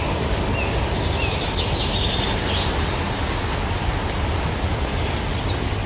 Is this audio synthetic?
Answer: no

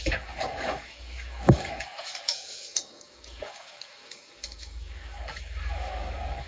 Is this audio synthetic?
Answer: yes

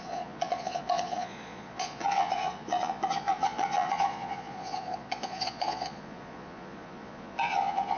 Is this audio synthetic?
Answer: yes